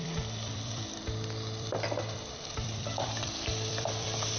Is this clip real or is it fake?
fake